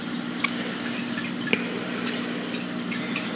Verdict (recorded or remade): recorded